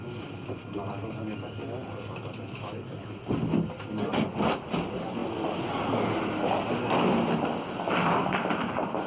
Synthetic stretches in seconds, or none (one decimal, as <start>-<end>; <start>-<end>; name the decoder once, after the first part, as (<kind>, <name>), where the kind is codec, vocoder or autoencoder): none